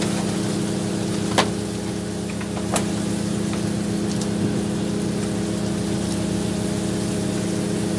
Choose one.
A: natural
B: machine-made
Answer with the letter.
A